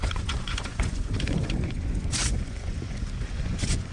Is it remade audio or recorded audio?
remade